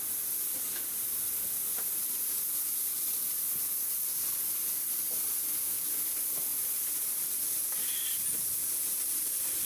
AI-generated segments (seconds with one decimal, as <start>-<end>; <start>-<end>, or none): none